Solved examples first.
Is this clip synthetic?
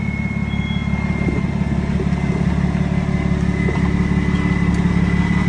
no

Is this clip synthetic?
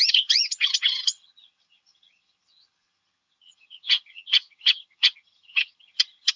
yes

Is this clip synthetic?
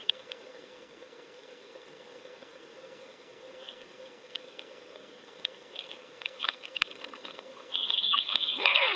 yes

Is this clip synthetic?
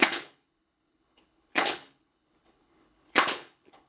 yes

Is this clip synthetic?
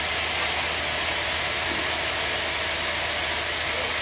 no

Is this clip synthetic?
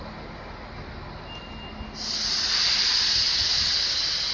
no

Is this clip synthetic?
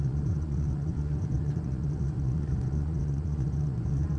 yes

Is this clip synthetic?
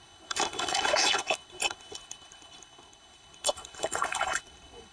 yes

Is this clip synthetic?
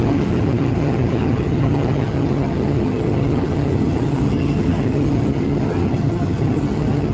yes